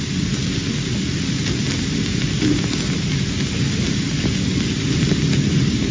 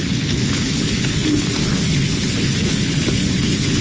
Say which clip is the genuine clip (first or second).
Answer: first